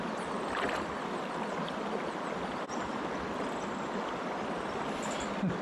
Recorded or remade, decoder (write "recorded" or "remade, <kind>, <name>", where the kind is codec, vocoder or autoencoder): recorded